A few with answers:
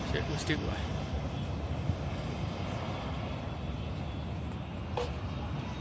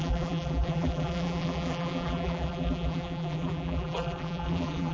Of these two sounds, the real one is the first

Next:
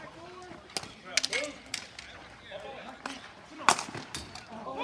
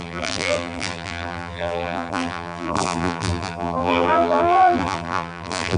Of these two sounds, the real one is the first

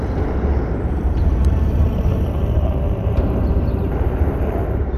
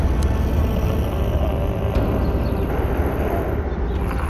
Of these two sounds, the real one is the second